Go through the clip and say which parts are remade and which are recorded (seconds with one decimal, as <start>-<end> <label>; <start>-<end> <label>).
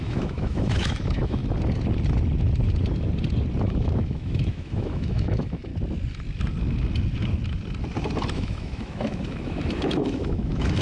0.0-1.4 remade; 1.4-3.6 recorded; 3.6-5.7 remade; 5.7-8.3 recorded; 8.3-10.8 remade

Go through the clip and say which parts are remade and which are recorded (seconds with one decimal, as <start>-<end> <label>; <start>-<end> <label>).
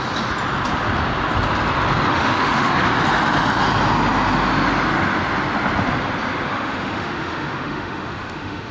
0.0-2.1 recorded; 2.1-2.7 remade; 2.7-6.5 recorded; 6.5-8.7 remade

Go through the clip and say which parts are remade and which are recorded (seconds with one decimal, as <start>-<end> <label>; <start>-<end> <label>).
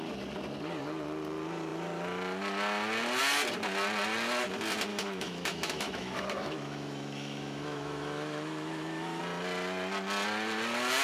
0.0-4.9 recorded; 4.9-9.2 remade; 9.2-11.0 recorded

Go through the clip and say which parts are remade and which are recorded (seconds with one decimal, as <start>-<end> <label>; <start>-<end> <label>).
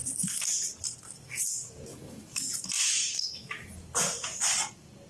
0.0-1.9 recorded; 1.9-2.5 remade; 2.5-3.0 recorded; 3.0-3.7 remade; 3.7-5.1 recorded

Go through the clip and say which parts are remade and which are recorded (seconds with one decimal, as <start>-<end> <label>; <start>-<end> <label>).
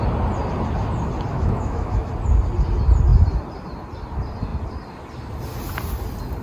0.0-1.3 recorded; 1.3-2.1 remade; 2.1-6.4 recorded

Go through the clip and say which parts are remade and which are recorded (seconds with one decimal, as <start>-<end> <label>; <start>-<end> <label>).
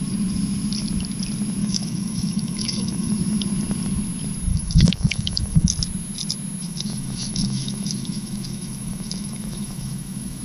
0.0-1.6 recorded; 1.6-3.1 remade; 3.1-4.5 recorded; 4.5-5.7 remade; 5.7-6.6 recorded; 6.6-10.4 remade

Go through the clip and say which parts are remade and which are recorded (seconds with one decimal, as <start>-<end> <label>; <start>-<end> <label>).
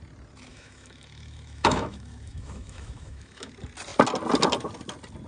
0.0-0.5 recorded; 0.5-3.5 remade; 3.5-5.3 recorded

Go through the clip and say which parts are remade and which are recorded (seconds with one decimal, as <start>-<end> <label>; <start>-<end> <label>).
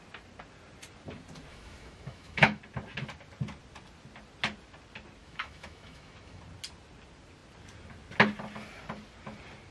0.0-1.5 recorded; 1.5-2.6 remade; 2.6-5.2 recorded; 5.2-6.4 remade; 6.4-9.7 recorded